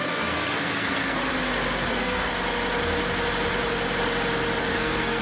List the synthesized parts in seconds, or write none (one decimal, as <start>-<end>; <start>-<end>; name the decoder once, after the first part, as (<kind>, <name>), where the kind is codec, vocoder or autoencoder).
0.0-1.2 (codec, SNAC); 1.9-2.3; 4.6-5.2